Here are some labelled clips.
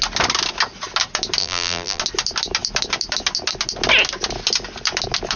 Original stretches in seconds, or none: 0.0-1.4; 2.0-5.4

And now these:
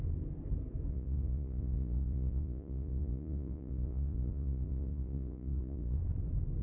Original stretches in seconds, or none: 0.0-0.9; 6.0-6.6